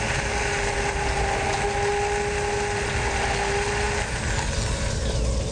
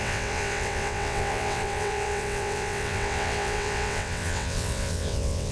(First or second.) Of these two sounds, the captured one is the first